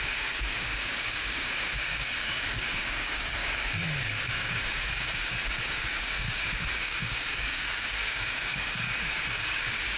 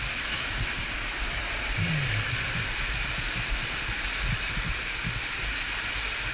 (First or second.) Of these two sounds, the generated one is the first